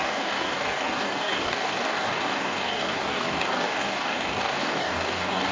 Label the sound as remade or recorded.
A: remade